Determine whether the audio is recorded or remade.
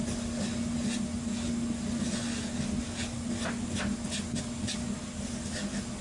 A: recorded